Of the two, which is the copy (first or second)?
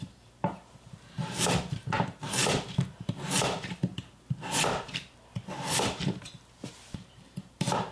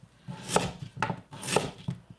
first